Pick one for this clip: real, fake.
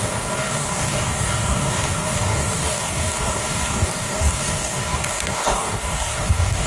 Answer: fake